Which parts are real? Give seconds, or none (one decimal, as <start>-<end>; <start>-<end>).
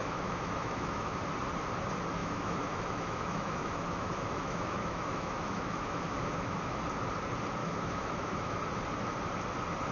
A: 1.2-2.2; 6.8-7.6; 8.6-9.9